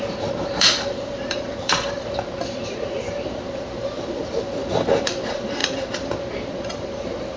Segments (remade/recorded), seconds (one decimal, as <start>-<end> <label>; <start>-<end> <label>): 0.0-7.4 remade